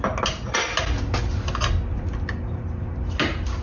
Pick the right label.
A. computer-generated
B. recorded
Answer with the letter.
B